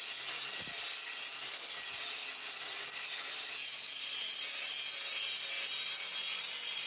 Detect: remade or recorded recorded